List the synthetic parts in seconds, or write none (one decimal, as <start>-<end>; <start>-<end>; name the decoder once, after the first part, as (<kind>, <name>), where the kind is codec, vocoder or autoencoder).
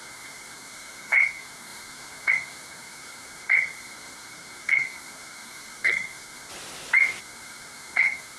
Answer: 0.0-6.5 (codec, SNAC); 7.2-8.4